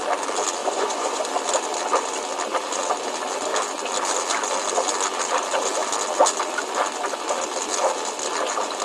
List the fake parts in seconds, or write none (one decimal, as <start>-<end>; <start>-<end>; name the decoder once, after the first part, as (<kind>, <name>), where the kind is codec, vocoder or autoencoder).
0.6-1.3 (vocoder, Vocos)